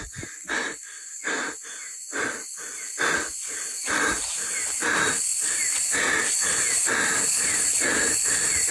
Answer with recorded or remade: recorded